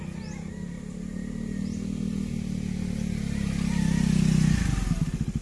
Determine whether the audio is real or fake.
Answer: real